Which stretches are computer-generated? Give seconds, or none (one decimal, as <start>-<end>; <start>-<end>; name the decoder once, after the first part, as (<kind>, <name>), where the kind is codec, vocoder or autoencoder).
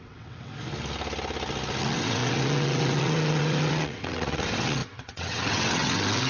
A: 0.0-0.5 (vocoder, WaveNeXt); 1.8-6.3